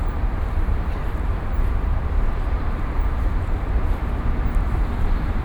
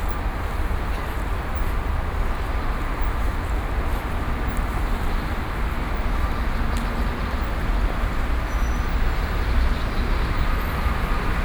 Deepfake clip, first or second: first